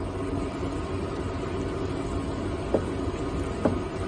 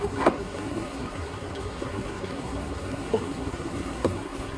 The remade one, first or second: second